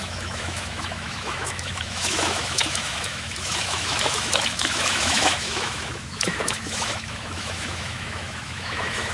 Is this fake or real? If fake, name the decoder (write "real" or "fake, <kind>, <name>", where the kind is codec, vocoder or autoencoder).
fake, autoencoder, DAC-VAE